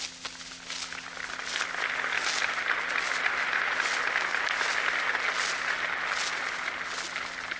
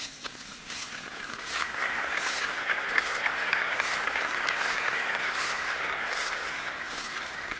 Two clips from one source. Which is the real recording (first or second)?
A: first